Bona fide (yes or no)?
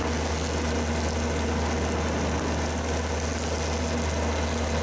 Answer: yes